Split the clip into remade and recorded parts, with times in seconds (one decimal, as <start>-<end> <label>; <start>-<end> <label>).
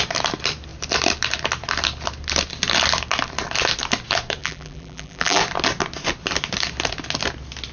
0.0-4.4 recorded; 4.4-5.4 remade; 5.4-7.7 recorded